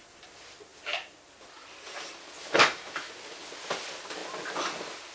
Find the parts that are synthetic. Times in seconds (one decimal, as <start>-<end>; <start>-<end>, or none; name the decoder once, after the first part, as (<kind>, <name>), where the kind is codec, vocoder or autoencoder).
2.4-3.1 (autoencoder, DAC-VAE)